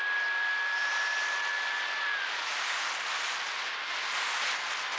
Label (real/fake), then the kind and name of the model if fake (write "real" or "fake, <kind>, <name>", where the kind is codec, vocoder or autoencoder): real